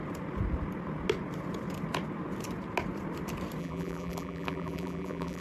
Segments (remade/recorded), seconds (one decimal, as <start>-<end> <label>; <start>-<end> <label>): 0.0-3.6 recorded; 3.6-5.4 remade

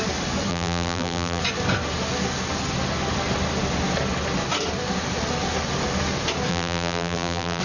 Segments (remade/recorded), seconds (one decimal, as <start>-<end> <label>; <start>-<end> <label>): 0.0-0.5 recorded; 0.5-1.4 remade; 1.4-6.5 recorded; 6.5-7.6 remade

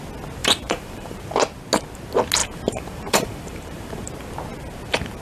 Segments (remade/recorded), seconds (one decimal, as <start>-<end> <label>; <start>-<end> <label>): 0.0-0.4 recorded; 0.4-1.2 remade; 1.2-2.4 recorded; 2.4-4.1 remade; 4.1-5.2 recorded